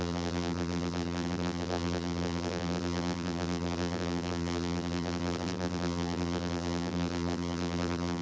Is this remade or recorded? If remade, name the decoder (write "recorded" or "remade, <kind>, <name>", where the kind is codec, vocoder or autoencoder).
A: remade, vocoder, BigVGAN v2